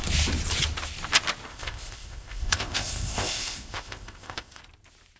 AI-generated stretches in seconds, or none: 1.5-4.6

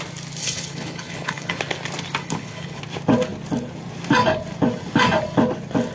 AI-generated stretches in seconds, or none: 0.4-1.6; 2.2-2.8

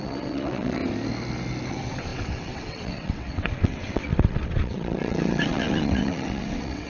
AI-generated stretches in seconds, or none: 0.0-0.8; 1.7-6.9

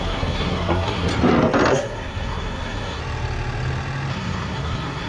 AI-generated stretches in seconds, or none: 0.0-1.1; 1.7-3.0; 4.1-5.1

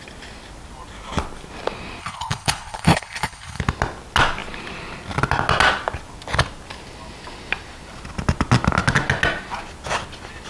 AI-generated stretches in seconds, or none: 2.0-3.6

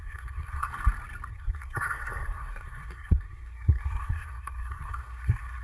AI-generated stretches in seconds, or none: 0.0-0.7; 1.3-5.6

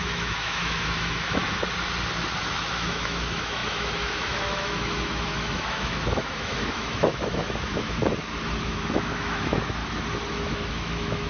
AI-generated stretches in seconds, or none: 0.0-1.4; 2.7-8.0; 8.6-9.8; 10.5-11.3